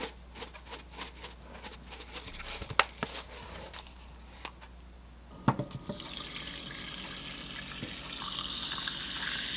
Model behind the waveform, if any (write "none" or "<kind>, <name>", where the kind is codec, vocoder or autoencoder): none